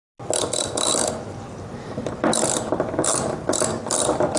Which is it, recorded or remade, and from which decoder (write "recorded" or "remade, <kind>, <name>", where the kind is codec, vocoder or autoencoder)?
recorded